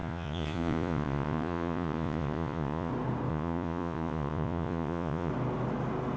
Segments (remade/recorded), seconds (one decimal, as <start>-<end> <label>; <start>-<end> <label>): 0.0-2.9 remade; 2.9-3.3 recorded; 3.3-5.3 remade; 5.3-6.2 recorded